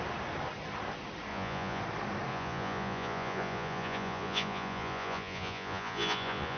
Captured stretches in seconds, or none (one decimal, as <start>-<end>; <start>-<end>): 0.0-1.3; 1.8-2.3